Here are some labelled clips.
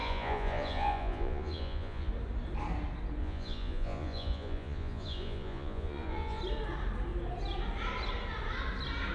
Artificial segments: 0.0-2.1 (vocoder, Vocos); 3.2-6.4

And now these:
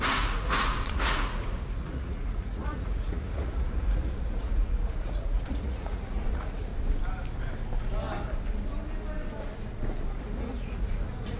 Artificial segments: 0.0-6.7 (vocoder, Vocos); 10.2-11.4